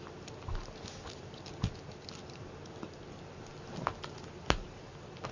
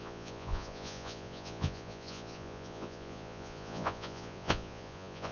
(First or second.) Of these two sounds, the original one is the first